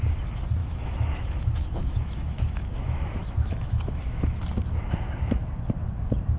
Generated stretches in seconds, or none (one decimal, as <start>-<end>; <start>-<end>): 0.6-4.4